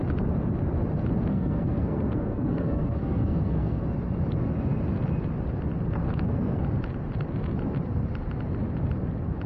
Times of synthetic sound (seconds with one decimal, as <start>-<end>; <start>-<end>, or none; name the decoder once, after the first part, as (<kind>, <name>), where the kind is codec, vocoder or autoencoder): 1.3-3.8 (codec, SNAC); 6.0-6.6